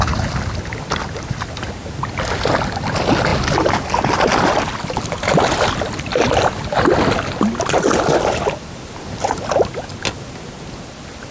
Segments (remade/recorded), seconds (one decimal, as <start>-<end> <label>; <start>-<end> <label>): 0.0-11.3 recorded